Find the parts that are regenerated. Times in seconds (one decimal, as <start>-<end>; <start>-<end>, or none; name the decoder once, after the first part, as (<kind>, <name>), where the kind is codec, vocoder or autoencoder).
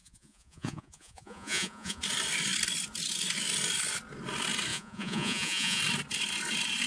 0.0-2.0 (vocoder, Vocos); 4.7-5.8